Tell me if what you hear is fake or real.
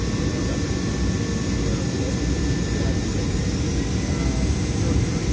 real